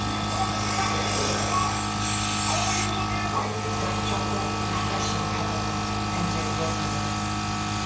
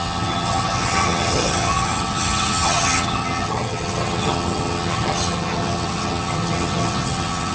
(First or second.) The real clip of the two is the first